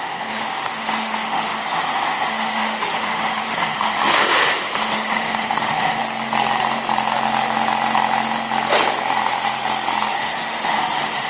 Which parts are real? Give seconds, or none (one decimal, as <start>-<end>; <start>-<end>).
6.0-10.1